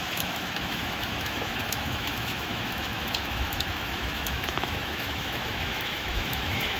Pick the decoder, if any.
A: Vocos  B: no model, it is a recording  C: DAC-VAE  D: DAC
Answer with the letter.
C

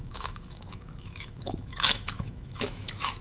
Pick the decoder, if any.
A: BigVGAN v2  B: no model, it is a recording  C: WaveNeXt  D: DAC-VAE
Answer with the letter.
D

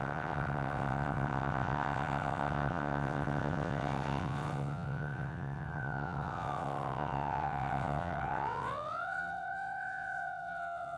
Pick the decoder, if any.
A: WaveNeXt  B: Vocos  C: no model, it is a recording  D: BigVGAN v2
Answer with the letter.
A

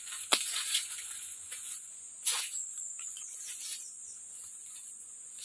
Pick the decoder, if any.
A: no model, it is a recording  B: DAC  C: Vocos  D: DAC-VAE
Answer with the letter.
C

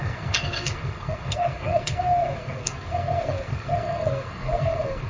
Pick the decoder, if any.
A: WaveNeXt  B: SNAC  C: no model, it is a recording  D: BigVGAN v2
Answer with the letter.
B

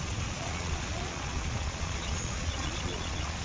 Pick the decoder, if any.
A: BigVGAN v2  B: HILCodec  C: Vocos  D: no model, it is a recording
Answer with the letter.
C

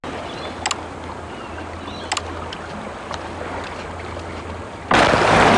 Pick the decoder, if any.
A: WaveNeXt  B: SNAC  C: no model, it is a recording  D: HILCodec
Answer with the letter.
C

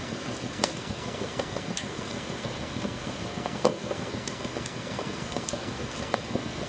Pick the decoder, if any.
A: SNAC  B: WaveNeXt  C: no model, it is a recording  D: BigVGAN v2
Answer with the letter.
A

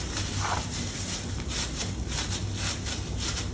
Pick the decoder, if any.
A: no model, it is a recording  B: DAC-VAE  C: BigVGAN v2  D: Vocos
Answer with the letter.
A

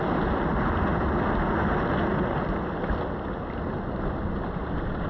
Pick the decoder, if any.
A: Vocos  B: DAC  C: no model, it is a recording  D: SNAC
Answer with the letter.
C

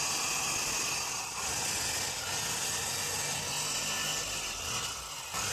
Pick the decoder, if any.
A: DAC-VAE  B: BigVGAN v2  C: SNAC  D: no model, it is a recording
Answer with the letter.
D